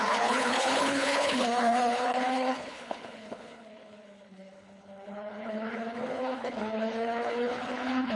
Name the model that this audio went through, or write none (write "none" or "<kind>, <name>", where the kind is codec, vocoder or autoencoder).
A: codec, HILCodec